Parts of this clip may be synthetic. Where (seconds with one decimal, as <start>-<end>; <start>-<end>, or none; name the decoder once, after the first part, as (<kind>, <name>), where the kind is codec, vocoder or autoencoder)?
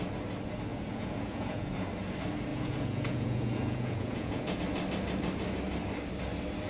0.7-1.9 (vocoder, Vocos); 2.5-4.6